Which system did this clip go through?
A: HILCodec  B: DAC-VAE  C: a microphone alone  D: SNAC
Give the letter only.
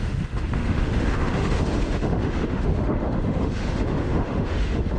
B